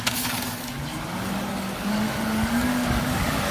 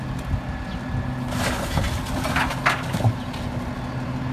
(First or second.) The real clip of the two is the second